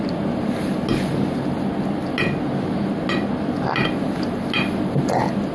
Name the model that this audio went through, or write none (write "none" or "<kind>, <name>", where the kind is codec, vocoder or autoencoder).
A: none